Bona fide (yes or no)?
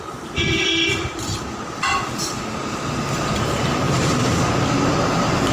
no